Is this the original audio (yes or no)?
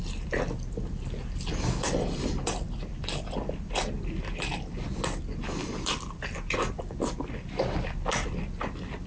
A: no